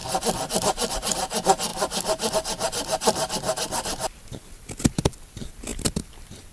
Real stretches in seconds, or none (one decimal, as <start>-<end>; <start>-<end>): 0.0-6.5